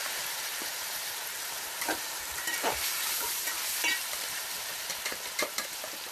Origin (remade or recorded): remade